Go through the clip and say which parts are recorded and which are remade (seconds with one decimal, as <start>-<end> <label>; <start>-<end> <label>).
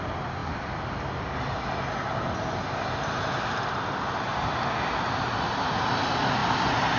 0.0-7.0 recorded